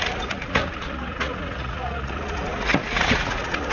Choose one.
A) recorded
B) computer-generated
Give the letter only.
B